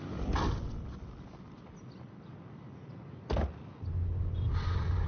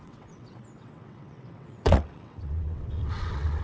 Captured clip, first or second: first